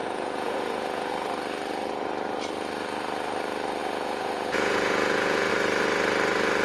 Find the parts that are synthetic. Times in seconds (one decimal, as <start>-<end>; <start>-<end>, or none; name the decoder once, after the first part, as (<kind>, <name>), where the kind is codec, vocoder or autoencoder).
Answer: 0.0-1.1 (vocoder, Vocos); 3.8-5.5